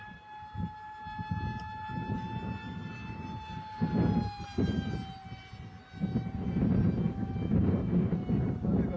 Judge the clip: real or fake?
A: real